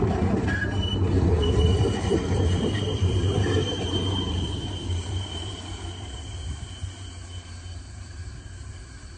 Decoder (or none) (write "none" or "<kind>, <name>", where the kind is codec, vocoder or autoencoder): vocoder, BigVGAN v2